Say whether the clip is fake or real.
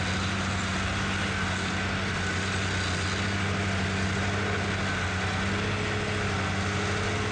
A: real